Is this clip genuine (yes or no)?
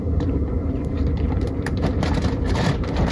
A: no